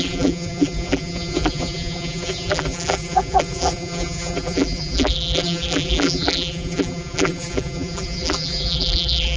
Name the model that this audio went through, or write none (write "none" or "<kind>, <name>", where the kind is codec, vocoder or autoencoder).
vocoder, BigVGAN v2